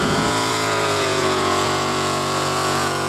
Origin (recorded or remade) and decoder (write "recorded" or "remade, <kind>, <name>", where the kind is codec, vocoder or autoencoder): remade, vocoder, Vocos